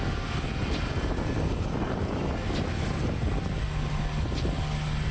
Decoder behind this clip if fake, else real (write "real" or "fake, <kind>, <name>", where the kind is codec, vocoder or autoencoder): real